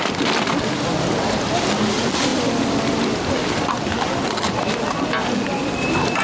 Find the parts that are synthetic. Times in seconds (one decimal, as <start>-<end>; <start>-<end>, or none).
none